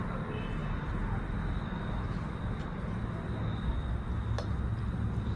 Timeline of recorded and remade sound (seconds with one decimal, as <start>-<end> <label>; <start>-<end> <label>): 0.0-5.4 recorded